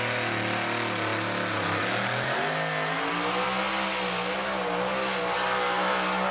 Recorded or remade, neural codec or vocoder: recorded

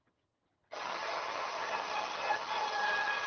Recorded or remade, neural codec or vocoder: remade, vocoder, HiFi-GAN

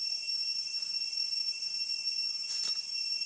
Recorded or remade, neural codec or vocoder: recorded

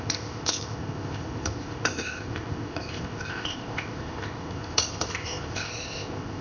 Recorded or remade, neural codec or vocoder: remade, codec, ZipCodec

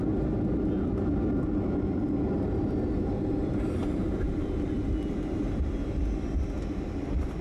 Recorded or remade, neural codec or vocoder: recorded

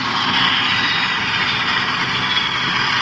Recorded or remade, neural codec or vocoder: recorded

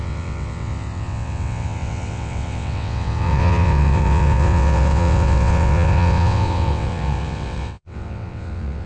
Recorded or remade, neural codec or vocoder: remade, vocoder, WaveNeXt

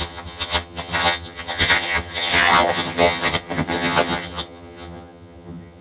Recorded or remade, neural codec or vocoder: remade, vocoder, HiFi-GAN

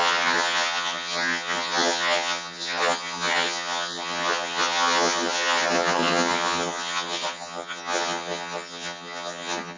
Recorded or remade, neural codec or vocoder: remade, vocoder, HiFi-GAN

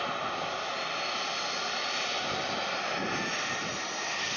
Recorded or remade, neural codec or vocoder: recorded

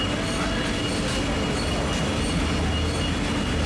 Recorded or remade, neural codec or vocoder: recorded